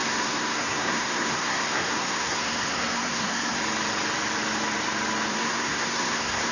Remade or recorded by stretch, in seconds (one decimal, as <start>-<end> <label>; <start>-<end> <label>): 0.0-3.6 remade; 3.6-5.3 recorded; 5.3-6.5 remade